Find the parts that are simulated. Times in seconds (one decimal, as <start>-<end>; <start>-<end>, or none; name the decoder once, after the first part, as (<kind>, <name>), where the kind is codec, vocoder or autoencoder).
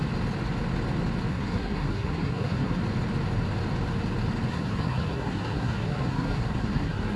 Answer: 1.3-2.8 (codec, SNAC); 4.5-7.2